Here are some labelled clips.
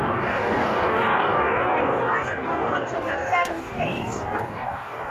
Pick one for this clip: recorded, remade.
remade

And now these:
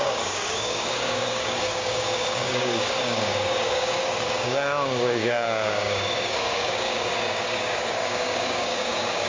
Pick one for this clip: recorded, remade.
remade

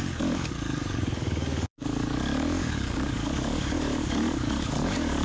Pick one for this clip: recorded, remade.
remade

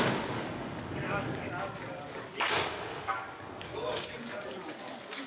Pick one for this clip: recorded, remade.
remade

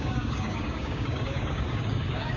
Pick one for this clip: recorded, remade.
remade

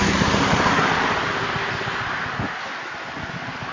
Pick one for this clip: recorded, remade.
recorded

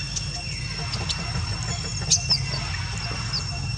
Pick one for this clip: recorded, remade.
recorded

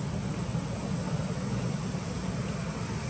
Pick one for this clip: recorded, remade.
recorded